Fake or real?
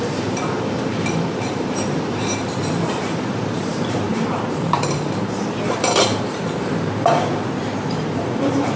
fake